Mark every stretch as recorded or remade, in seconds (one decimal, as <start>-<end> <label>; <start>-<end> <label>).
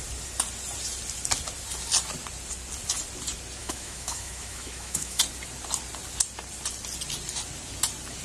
0.0-3.6 recorded; 3.6-5.2 remade; 5.2-8.2 recorded